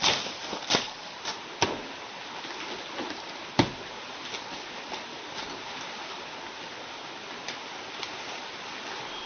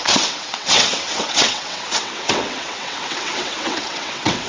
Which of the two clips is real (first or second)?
first